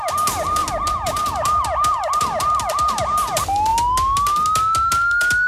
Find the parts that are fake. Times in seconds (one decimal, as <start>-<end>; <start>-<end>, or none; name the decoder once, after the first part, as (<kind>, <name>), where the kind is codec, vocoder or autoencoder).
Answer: 0.6-2.2 (vocoder, BigVGAN v2)

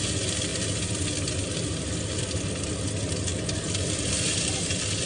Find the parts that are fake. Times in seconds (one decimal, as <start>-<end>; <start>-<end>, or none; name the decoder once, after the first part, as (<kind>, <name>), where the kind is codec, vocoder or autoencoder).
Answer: none

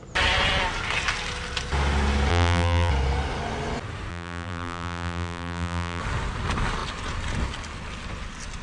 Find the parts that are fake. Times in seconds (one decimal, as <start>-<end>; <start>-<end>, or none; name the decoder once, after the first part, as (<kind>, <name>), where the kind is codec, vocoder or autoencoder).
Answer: 2.3-2.9 (vocoder, BigVGAN v2); 4.1-6.0